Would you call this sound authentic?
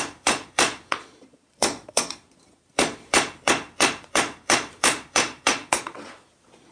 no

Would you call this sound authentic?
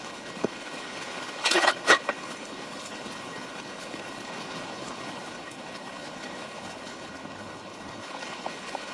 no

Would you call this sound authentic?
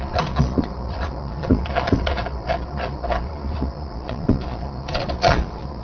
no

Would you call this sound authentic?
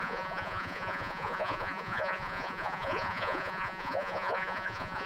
no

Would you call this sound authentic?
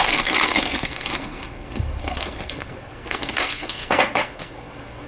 no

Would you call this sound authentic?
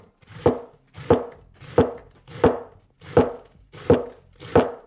yes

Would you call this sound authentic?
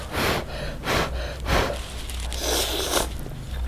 yes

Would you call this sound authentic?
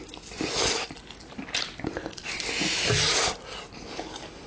yes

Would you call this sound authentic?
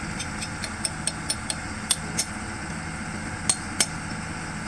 yes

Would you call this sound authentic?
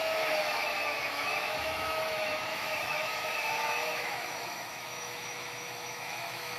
no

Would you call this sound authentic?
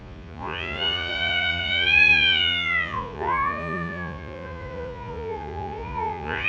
no